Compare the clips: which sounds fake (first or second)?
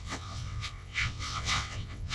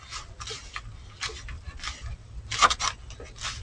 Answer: first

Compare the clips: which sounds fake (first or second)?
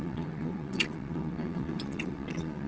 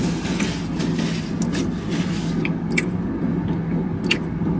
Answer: first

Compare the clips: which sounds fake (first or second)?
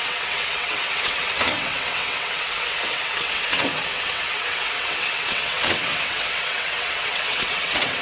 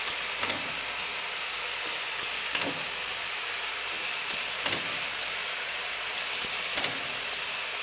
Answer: first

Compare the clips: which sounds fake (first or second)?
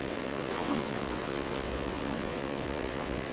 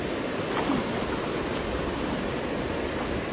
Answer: first